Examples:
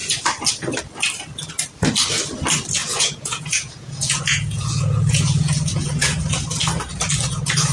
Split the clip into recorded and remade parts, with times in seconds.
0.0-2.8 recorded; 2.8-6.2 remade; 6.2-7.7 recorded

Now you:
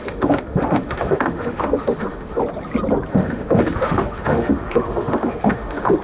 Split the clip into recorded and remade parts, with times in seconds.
0.0-2.4 remade; 2.4-3.1 recorded; 3.1-6.0 remade

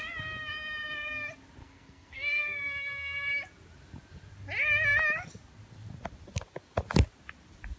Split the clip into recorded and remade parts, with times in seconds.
0.0-1.6 recorded; 1.6-3.3 remade; 3.3-7.8 recorded

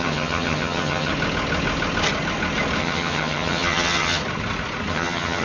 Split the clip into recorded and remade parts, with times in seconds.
0.0-1.1 remade; 1.1-2.8 recorded; 2.8-4.2 remade; 4.2-4.9 recorded; 4.9-5.4 remade

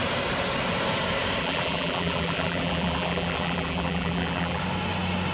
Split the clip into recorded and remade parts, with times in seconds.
0.0-1.4 recorded; 1.4-4.6 remade; 4.6-5.3 recorded

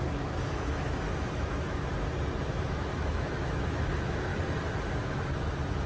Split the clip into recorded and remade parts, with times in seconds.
0.0-1.9 remade; 1.9-2.4 recorded; 2.4-4.3 remade; 4.3-5.0 recorded; 5.0-5.9 remade

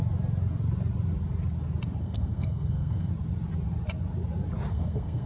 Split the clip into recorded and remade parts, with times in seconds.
0.0-2.0 recorded; 2.0-3.1 remade; 3.1-4.7 recorded; 4.7-5.3 remade

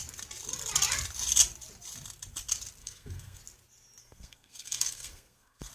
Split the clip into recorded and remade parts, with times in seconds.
0.0-2.8 recorded; 2.8-3.4 remade; 3.4-4.0 recorded; 4.0-5.7 remade